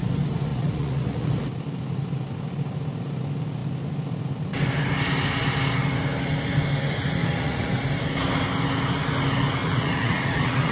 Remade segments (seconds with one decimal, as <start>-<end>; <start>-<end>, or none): 0.5-1.3; 7.2-7.7; 9.6-10.7